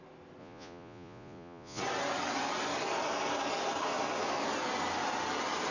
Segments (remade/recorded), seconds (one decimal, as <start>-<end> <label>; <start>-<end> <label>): 0.0-0.4 recorded; 0.4-1.8 remade; 1.8-5.7 recorded